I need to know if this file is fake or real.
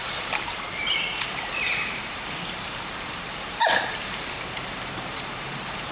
fake